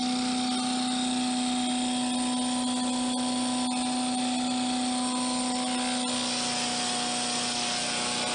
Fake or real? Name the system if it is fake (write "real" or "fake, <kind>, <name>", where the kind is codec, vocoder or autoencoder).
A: real